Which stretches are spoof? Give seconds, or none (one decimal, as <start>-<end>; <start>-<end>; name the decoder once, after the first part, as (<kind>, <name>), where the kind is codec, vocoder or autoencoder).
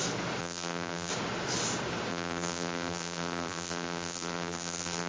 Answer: 0.4-1.1 (vocoder, BigVGAN v2); 2.1-5.1